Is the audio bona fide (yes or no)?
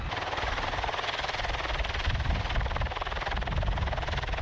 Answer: yes